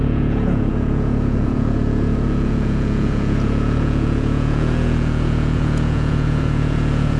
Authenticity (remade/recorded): remade